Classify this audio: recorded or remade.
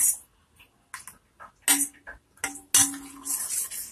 recorded